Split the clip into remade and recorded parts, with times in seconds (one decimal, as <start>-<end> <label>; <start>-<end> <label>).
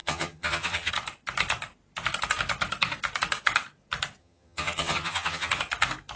0.0-0.9 remade; 0.9-4.2 recorded; 4.2-5.5 remade; 5.5-6.2 recorded